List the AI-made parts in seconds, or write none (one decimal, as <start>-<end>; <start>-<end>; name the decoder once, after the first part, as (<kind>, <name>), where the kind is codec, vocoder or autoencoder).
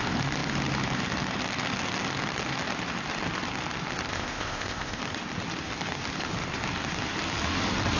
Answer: 4.1-5.0 (codec, ZipCodec)